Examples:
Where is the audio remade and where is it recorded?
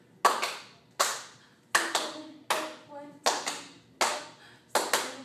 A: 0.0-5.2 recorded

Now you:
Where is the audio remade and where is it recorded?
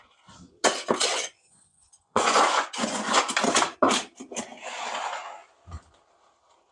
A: 0.0-1.1 recorded; 1.1-3.2 remade; 3.2-6.7 recorded